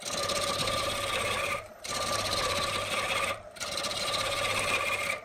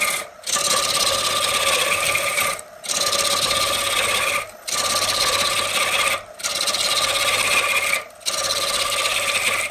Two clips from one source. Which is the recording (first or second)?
second